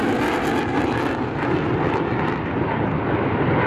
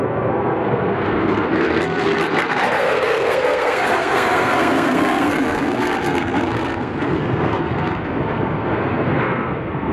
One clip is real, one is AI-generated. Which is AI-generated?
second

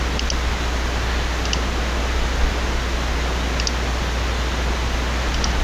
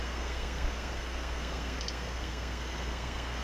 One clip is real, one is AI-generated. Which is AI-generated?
second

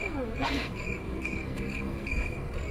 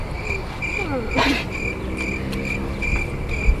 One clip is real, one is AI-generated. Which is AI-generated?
first